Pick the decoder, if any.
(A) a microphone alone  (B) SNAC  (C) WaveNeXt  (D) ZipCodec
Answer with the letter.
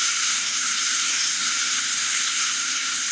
B